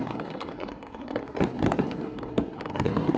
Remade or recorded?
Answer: remade